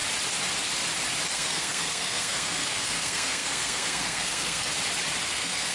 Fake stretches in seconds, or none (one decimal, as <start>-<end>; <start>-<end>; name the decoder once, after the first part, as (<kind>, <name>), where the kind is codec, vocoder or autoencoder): 1.3-4.7 (codec, SNAC); 5.3-5.7